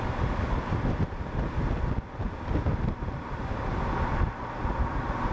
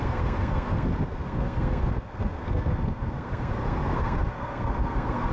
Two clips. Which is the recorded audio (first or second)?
first